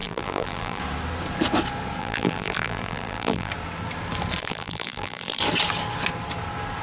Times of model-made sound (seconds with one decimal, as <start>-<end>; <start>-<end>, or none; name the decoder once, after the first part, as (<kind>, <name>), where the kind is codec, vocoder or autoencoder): 0.0-0.8 (vocoder, BigVGAN v2); 2.0-3.5; 4.4-5.4